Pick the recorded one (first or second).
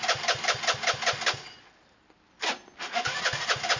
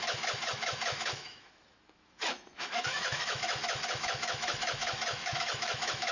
first